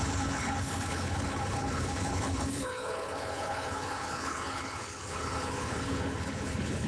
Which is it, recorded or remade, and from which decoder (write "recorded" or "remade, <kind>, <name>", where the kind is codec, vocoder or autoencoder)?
remade, codec, HILCodec